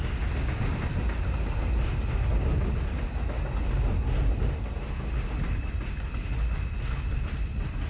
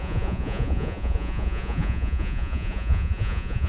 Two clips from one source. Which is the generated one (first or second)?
second